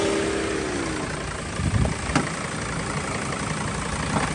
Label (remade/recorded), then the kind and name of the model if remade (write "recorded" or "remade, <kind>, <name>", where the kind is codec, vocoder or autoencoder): recorded